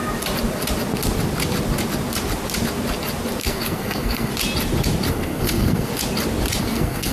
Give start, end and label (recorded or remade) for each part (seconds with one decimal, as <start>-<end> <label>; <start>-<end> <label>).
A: 0.0-3.4 recorded; 3.4-4.3 remade; 4.3-5.1 recorded; 5.1-5.9 remade; 5.9-6.6 recorded; 6.6-7.1 remade